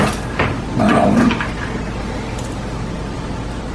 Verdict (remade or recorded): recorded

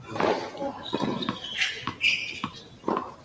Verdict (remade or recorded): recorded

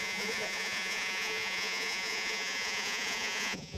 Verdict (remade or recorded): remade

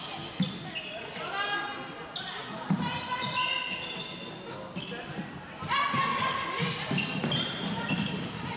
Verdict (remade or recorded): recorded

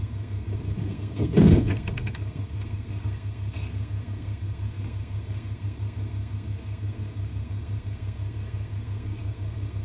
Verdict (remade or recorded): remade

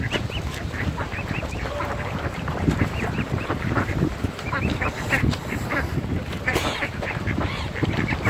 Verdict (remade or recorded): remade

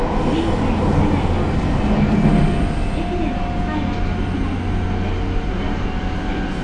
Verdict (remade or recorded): recorded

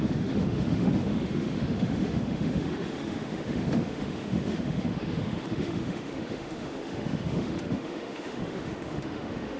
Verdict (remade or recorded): remade